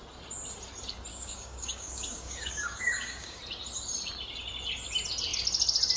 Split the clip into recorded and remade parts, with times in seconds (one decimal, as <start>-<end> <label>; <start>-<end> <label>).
0.0-1.1 recorded; 1.1-3.4 remade; 3.4-6.0 recorded